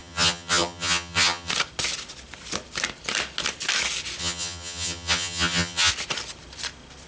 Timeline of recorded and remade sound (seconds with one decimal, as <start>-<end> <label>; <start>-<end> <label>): 0.0-1.5 remade; 1.5-4.2 recorded; 4.2-5.9 remade; 5.9-7.1 recorded

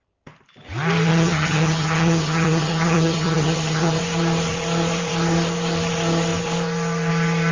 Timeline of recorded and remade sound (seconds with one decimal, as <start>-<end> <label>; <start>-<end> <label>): 0.0-1.1 recorded; 1.1-4.0 remade; 4.0-7.5 recorded

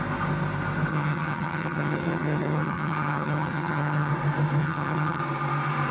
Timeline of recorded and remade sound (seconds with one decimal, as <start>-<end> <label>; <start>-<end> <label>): 0.0-0.9 recorded; 0.9-4.1 remade; 4.1-4.6 recorded; 4.6-5.2 remade; 5.2-5.9 recorded

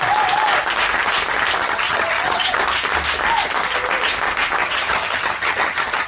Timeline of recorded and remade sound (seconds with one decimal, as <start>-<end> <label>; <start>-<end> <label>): 0.0-1.6 recorded; 1.6-2.6 remade; 2.6-4.6 recorded; 4.6-6.1 remade

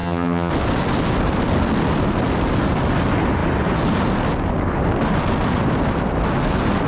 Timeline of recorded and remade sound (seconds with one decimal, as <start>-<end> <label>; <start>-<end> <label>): 0.0-0.5 remade; 0.5-6.9 recorded

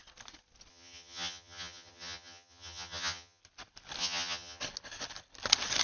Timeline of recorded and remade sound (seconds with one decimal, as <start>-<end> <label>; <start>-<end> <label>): 0.0-0.7 recorded; 0.7-3.4 remade; 3.4-4.0 recorded; 4.0-4.6 remade; 4.6-5.8 recorded

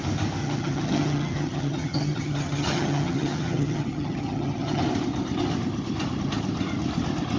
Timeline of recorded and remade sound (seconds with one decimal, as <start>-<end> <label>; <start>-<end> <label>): 0.0-0.4 recorded; 0.4-4.8 remade; 4.8-7.4 recorded